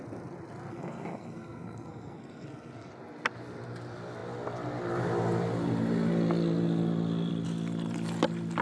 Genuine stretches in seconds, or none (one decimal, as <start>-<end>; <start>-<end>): 0.0-0.7; 2.9-8.6